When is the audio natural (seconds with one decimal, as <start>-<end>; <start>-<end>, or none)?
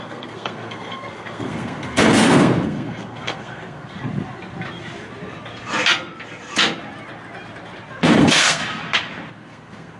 4.0-8.2; 8.6-9.3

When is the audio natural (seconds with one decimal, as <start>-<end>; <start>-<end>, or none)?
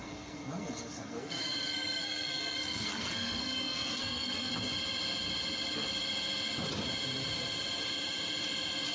4.5-8.9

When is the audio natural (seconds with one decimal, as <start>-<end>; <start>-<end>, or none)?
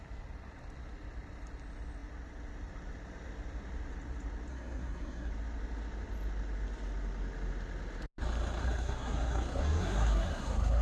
0.0-4.5; 5.3-8.6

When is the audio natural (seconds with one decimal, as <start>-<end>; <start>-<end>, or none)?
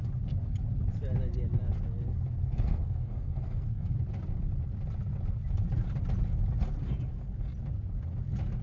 0.0-2.4; 3.9-8.6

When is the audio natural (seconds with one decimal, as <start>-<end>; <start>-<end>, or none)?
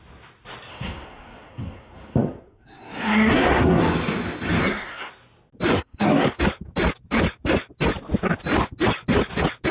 0.0-0.7; 3.8-4.6; 5.1-5.7; 6.4-9.7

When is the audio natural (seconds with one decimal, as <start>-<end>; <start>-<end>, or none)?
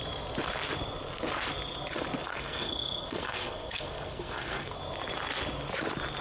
0.0-2.3; 4.8-6.2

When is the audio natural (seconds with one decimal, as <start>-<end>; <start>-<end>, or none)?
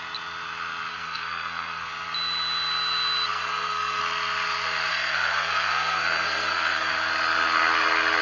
0.0-0.9; 1.9-3.3; 4.0-4.9; 6.9-8.2